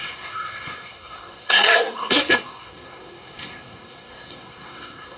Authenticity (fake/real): fake